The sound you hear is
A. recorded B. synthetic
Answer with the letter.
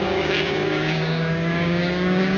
B